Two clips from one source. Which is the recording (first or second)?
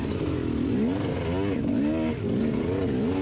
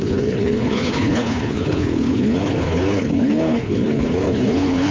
first